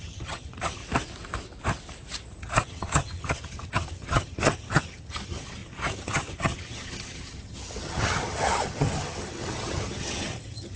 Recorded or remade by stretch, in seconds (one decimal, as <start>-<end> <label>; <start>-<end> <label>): 0.0-0.8 remade; 0.8-2.4 recorded; 2.4-10.8 remade